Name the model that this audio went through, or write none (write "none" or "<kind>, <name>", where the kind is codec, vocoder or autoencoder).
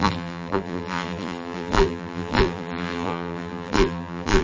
vocoder, BigVGAN v2